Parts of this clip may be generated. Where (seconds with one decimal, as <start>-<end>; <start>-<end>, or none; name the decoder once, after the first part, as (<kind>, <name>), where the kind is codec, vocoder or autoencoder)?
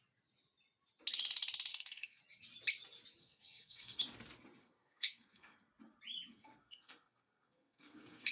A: 1.7-2.2 (codec, SNAC); 3.2-4.0; 4.6-5.7; 6.3-8.3